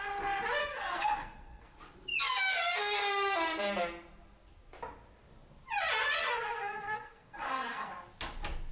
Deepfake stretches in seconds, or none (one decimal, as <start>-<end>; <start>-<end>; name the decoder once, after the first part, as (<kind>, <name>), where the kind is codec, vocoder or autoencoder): 0.6-1.7 (codec, SNAC); 6.2-7.9